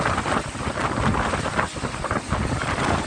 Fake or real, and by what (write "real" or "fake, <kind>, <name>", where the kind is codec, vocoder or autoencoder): real